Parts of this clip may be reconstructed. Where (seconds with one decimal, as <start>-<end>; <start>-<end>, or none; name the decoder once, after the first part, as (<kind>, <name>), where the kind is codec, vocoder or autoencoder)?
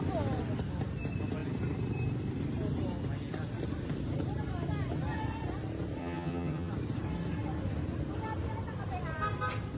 6.0-6.7 (vocoder, HiFi-GAN)